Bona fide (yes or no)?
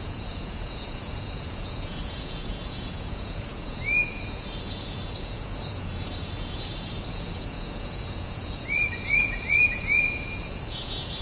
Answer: no